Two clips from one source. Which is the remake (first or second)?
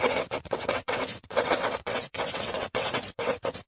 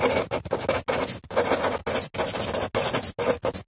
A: first